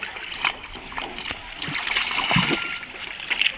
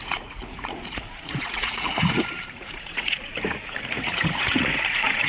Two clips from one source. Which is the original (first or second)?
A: first